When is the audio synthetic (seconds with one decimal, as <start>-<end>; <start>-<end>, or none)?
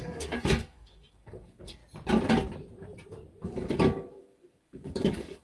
0.0-1.8; 3.4-5.4